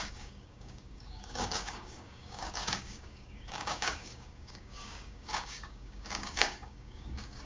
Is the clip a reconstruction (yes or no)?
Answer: yes